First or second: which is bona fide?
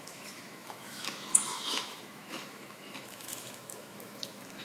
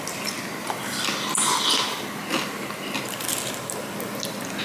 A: second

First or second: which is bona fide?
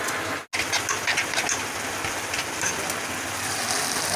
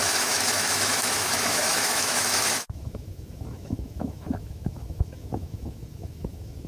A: first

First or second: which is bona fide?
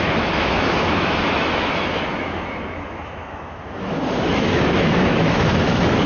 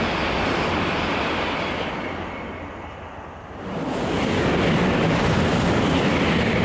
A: second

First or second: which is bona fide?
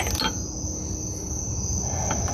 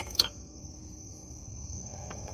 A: first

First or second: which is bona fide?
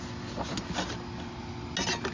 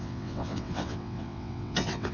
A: first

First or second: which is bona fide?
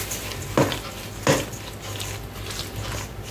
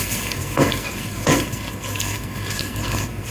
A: first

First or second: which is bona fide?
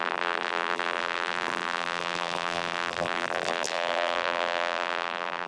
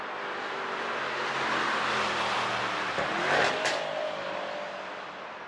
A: second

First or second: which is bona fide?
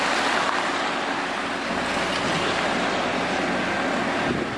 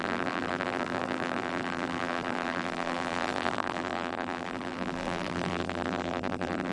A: first